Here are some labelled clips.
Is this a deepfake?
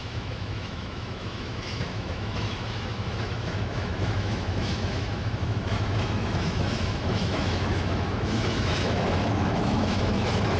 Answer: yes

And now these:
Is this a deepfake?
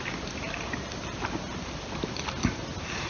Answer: no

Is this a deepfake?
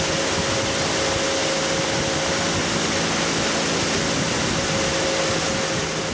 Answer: no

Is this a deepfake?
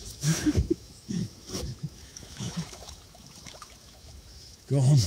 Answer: yes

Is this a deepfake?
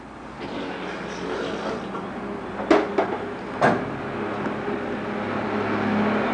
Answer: no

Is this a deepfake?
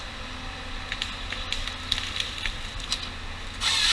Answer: no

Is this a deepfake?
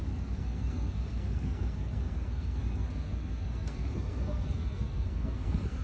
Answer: yes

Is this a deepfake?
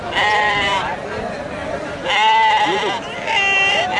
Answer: yes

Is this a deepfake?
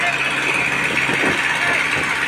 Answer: no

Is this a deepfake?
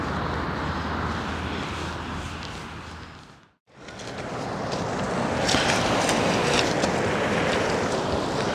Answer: no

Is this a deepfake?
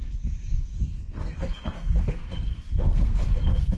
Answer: yes